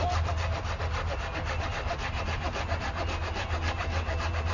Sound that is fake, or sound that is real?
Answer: real